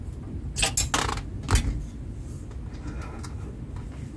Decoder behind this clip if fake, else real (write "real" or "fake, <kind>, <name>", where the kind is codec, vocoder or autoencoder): real